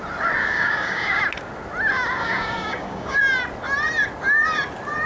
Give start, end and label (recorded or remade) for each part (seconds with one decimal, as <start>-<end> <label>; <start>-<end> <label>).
0.0-0.4 recorded; 0.4-1.2 remade; 1.2-2.2 recorded; 2.2-3.2 remade; 3.2-5.1 recorded